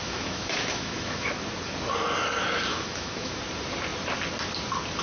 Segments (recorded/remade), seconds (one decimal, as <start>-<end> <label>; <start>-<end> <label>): 0.0-1.3 remade; 1.3-2.7 recorded; 2.7-3.4 remade; 3.4-5.0 recorded